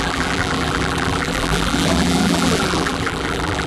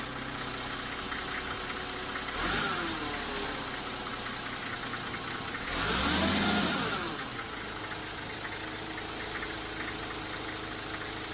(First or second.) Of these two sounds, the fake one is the first